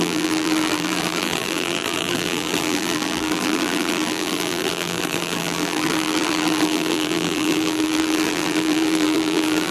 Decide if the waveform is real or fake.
fake